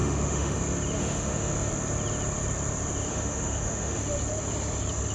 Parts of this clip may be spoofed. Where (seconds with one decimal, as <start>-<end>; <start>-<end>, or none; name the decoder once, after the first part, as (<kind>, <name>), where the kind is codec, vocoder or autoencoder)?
0.0-0.6 (autoencoder, DAC-VAE); 1.0-1.5; 3.1-4.0